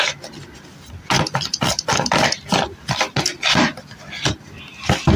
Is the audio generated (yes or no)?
no